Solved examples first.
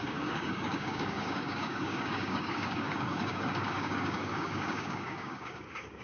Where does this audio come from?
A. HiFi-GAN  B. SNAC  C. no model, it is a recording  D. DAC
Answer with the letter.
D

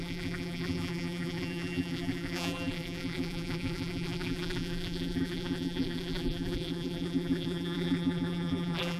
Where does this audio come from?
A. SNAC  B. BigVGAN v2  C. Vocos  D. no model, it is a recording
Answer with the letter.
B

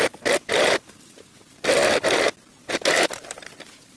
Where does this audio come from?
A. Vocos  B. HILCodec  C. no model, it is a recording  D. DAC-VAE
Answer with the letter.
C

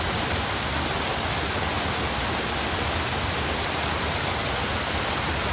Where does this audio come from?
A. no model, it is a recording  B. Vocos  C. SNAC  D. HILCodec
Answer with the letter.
A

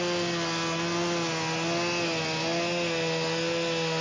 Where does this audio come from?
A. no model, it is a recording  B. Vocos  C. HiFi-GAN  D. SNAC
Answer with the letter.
A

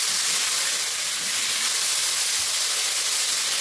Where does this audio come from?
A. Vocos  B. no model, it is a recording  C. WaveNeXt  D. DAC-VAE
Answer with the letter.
B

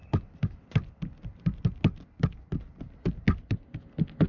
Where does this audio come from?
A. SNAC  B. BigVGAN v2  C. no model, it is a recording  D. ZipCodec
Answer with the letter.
C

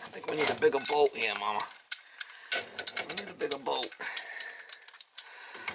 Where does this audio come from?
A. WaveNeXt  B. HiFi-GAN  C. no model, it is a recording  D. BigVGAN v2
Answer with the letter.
C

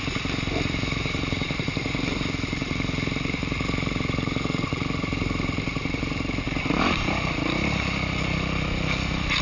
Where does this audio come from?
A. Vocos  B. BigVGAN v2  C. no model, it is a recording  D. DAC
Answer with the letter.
B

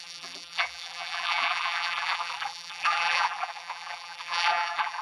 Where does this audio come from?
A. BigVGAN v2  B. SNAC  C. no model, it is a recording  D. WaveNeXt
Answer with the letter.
A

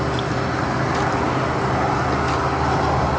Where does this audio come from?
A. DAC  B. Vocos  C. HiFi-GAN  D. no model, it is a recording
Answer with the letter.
D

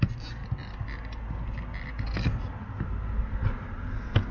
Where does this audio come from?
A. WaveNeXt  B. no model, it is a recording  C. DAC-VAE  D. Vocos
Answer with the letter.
B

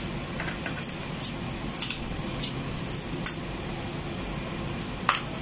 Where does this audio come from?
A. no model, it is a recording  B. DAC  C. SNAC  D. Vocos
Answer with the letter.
A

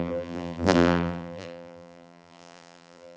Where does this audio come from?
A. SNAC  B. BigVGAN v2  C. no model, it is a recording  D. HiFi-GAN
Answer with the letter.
B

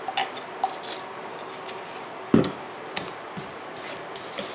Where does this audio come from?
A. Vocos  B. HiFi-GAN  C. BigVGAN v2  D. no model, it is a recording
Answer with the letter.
D